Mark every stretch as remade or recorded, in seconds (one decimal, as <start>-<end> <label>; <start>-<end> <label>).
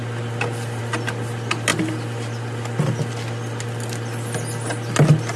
0.0-5.4 recorded